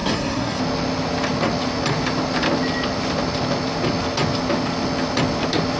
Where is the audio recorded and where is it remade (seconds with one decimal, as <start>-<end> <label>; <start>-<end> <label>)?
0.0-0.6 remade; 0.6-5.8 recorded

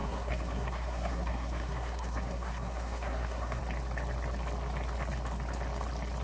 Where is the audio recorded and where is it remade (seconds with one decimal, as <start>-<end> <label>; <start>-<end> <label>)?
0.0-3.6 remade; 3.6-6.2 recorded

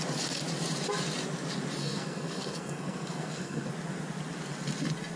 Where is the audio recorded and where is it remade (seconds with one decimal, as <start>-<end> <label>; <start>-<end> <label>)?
0.0-1.8 recorded; 1.8-3.7 remade; 3.7-5.2 recorded